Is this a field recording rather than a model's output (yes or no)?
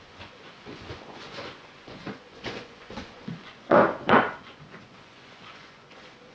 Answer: no